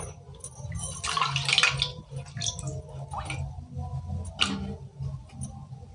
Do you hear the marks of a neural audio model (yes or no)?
no